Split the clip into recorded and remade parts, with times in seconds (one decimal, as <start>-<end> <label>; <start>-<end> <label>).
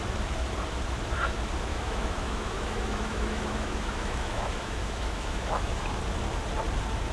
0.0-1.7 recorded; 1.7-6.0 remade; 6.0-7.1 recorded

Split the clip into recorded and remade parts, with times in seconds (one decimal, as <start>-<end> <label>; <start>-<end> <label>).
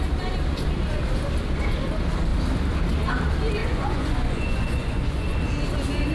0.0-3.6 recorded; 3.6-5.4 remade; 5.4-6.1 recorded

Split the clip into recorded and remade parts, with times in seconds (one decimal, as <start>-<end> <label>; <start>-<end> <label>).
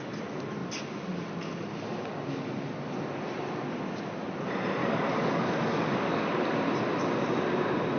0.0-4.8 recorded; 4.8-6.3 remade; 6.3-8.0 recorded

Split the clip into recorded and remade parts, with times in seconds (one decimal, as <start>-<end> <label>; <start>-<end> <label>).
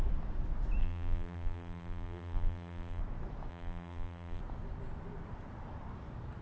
0.0-0.8 recorded; 0.8-3.0 remade; 3.0-3.5 recorded; 3.5-4.4 remade; 4.4-6.4 recorded